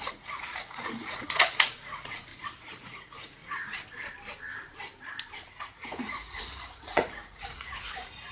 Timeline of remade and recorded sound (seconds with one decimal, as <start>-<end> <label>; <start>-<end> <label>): 0.0-2.3 remade; 2.3-2.8 recorded; 2.8-3.4 remade; 3.4-5.5 recorded; 5.5-8.3 remade